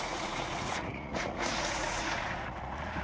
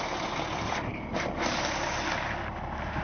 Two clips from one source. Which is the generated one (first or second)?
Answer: first